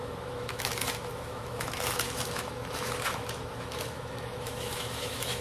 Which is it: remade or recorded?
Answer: remade